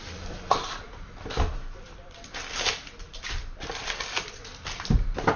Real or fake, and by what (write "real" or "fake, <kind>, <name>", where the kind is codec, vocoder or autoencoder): fake, vocoder, BigVGAN v2